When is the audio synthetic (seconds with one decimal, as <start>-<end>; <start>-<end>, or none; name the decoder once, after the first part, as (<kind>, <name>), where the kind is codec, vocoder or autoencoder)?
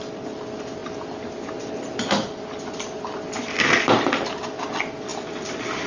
5.1-5.9 (vocoder, BigVGAN v2)